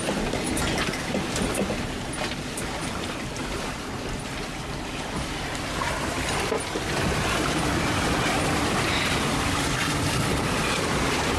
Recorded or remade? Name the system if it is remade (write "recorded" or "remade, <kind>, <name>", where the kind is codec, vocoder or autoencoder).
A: recorded